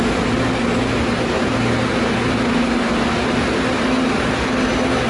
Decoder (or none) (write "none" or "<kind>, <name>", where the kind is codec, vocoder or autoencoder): none